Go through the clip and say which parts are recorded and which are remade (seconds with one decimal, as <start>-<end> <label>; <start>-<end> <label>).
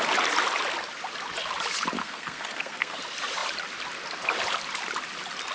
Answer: 0.0-2.0 recorded; 2.0-3.0 remade; 3.0-5.5 recorded